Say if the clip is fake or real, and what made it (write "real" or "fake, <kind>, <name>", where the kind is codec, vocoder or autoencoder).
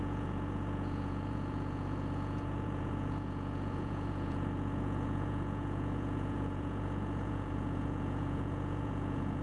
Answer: fake, vocoder, Vocos